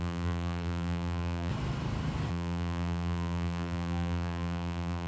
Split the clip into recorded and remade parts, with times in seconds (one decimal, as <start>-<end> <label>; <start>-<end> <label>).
0.0-1.5 remade; 1.5-2.3 recorded; 2.3-5.1 remade